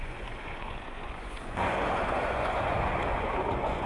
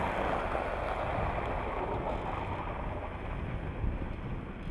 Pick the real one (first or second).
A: second